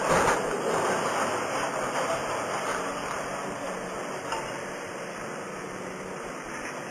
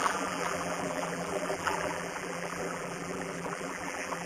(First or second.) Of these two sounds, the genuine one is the first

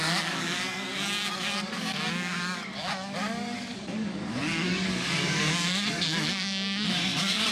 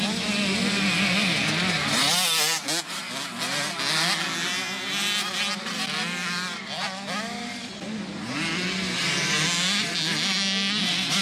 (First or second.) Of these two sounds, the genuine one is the second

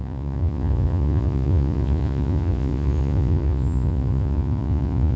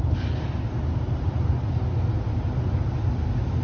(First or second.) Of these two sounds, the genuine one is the second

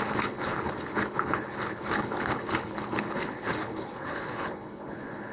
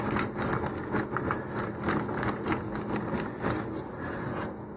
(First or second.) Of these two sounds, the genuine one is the second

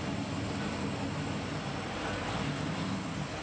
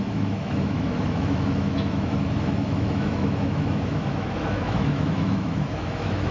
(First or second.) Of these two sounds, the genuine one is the first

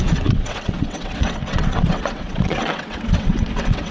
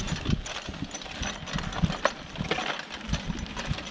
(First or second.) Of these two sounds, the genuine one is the second